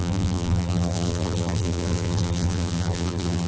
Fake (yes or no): yes